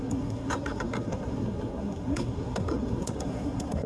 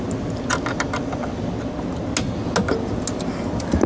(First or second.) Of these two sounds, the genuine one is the second